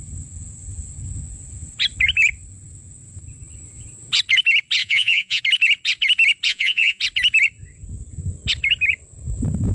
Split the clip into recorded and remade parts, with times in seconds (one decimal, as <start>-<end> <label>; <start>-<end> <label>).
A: 0.0-4.8 recorded; 4.8-5.4 remade; 5.4-6.5 recorded; 6.5-7.0 remade; 7.0-9.7 recorded